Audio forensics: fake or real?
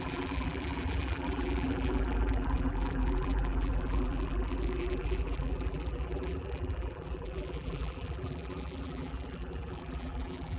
fake